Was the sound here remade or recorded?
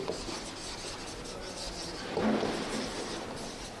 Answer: recorded